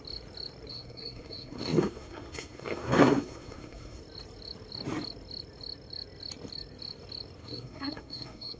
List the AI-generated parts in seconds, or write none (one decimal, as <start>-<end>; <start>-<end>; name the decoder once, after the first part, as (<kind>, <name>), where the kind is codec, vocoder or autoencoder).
0.7-4.0 (codec, SNAC); 7.4-8.6